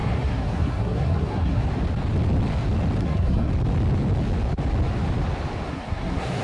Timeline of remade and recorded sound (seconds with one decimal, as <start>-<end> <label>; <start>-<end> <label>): 0.0-1.6 remade; 1.6-3.0 recorded; 3.0-3.5 remade; 3.5-5.7 recorded; 5.7-6.4 remade